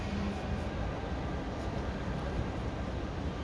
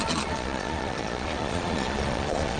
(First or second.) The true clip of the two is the first